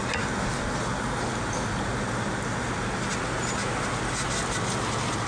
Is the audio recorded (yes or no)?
yes